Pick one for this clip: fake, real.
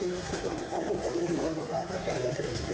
fake